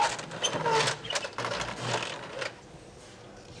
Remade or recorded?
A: recorded